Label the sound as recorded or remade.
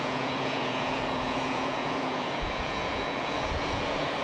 remade